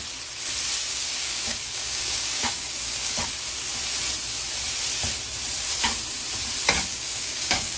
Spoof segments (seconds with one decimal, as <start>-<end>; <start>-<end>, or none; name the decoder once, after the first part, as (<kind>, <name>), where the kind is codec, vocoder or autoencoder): 0.9-3.2 (codec, DAC); 6.9-7.8